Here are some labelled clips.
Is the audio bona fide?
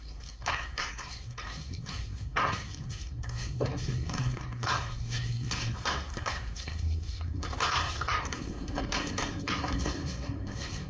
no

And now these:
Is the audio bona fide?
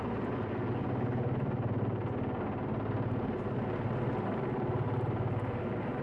yes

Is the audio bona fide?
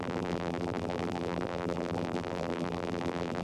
no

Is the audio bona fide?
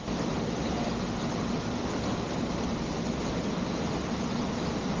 yes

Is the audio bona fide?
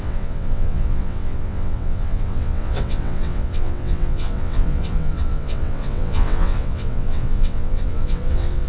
no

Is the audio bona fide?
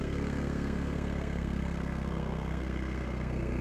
no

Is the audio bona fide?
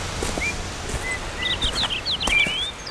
yes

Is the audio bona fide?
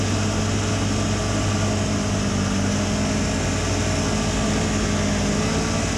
yes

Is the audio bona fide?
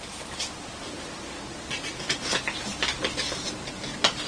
yes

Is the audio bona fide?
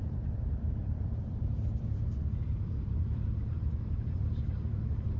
no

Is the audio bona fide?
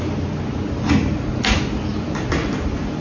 yes